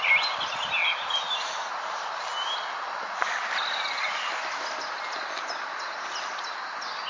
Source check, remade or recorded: recorded